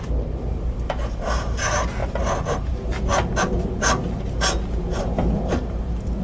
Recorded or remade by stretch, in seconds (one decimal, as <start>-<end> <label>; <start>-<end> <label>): 0.0-6.2 recorded